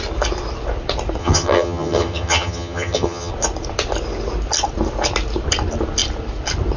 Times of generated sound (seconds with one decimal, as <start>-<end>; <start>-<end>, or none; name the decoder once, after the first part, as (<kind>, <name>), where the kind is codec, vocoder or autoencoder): 1.2-3.3 (vocoder, HiFi-GAN)